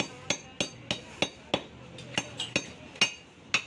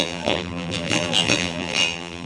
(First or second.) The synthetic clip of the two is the second